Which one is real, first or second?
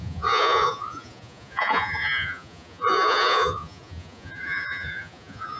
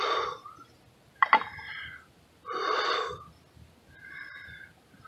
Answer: second